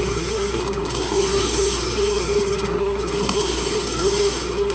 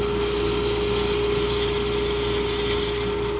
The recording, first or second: second